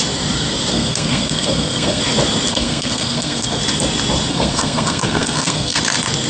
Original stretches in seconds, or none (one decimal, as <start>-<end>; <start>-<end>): 0.0-0.7; 2.0-2.5; 3.6-4.3; 5.8-6.3